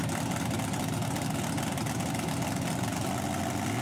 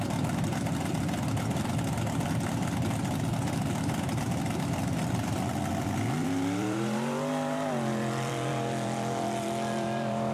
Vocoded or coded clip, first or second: second